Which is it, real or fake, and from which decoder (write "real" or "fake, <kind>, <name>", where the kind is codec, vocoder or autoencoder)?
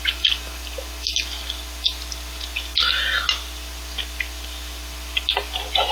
real